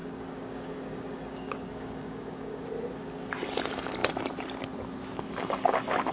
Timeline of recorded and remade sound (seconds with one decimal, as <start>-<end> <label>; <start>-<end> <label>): 0.0-2.6 remade; 2.6-6.1 recorded